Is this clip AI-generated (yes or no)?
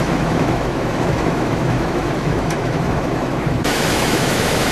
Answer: yes